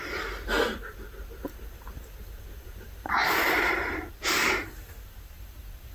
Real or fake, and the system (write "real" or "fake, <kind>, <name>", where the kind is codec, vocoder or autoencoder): fake, vocoder, BigVGAN v2